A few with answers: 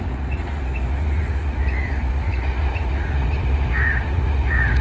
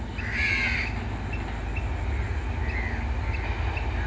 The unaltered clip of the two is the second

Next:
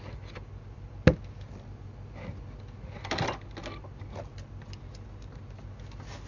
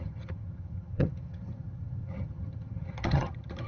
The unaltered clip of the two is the first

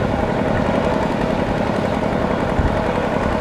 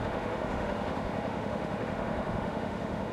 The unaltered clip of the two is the first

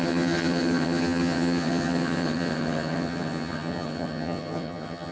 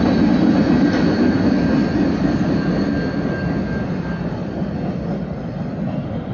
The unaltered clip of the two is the second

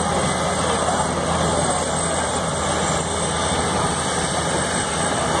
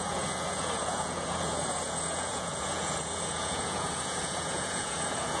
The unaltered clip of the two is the first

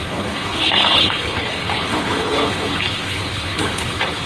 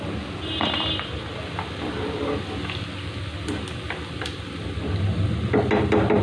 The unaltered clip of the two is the second